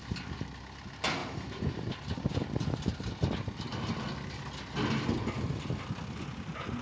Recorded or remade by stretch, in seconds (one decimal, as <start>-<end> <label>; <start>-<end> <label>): 0.0-1.2 recorded; 1.2-2.4 remade; 2.4-6.8 recorded